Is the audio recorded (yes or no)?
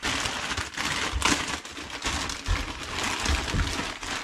yes